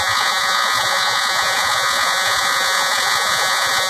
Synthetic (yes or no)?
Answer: yes